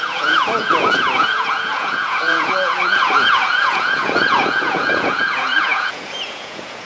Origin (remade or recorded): remade